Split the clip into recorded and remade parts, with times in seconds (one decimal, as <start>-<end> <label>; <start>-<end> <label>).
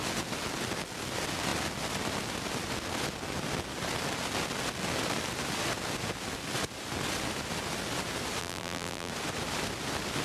0.0-8.4 recorded; 8.4-9.1 remade; 9.1-10.2 recorded